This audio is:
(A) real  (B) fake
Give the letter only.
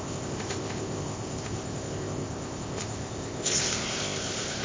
B